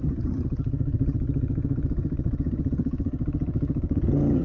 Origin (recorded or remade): remade